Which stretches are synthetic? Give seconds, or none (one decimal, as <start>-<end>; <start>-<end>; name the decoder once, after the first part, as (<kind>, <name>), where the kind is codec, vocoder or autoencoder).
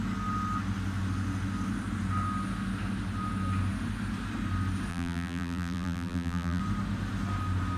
4.9-6.6 (vocoder, BigVGAN v2)